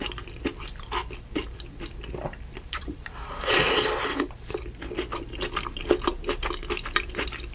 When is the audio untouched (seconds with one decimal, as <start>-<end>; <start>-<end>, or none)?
0.0-7.5